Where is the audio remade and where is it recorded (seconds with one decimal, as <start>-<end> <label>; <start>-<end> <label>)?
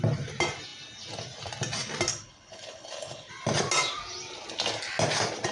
0.0-2.1 recorded; 2.1-3.3 remade; 3.3-5.5 recorded